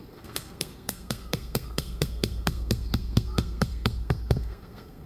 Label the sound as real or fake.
fake